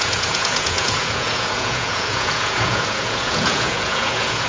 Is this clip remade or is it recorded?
remade